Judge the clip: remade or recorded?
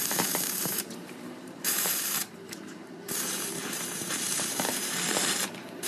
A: remade